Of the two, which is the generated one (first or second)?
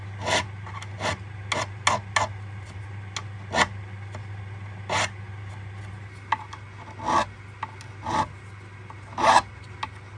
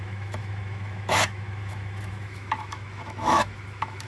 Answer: second